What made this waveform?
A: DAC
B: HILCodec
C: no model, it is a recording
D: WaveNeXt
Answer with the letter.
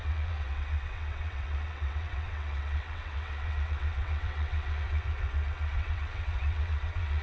D